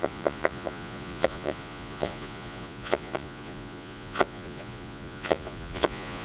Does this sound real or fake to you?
fake